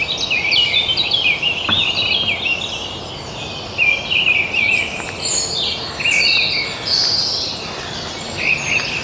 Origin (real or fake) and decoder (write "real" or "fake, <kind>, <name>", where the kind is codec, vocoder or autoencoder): real